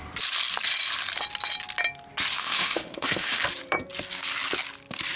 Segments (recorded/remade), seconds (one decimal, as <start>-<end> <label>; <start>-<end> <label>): 0.0-2.4 recorded; 2.4-3.4 remade; 3.4-5.2 recorded